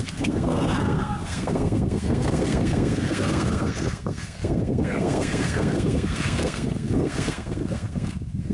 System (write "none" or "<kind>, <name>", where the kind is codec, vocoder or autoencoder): codec, SNAC